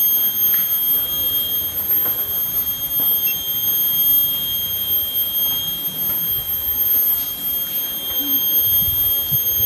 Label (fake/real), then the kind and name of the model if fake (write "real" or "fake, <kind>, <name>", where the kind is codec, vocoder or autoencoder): real